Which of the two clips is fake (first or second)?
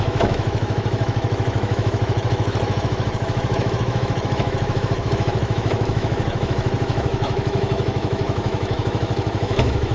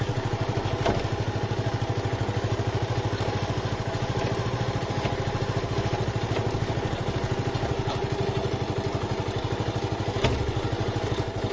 first